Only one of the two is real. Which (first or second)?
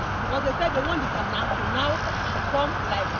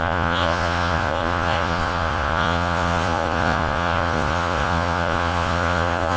first